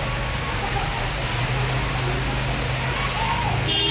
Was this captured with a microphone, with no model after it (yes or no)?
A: yes